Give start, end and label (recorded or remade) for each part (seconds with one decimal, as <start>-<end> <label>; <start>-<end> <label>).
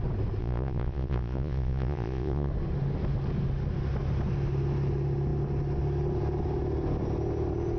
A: 0.0-0.4 recorded; 0.4-2.5 remade; 2.5-7.8 recorded